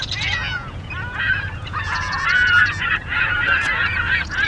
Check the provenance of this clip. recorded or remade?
remade